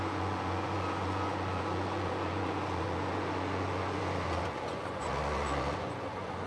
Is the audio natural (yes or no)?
no